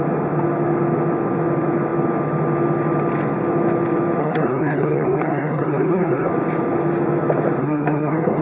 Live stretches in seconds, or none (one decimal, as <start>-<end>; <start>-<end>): 0.0-4.2; 6.3-7.6